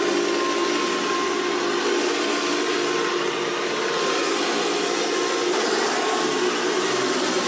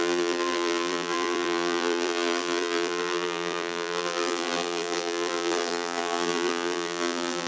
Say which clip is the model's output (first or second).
second